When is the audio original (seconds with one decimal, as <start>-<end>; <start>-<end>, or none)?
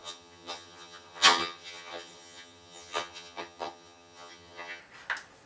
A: 4.8-5.5